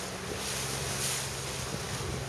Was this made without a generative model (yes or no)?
yes